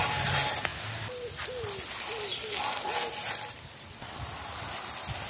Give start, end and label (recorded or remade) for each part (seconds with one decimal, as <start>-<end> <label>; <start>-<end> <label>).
0.0-5.3 recorded